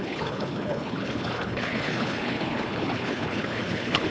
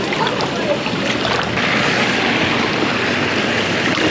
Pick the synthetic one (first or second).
first